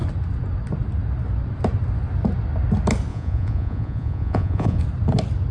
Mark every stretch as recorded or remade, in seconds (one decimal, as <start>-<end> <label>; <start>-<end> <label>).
0.0-3.1 recorded; 3.1-4.8 remade; 4.8-5.5 recorded